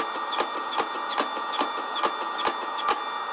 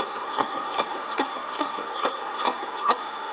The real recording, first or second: first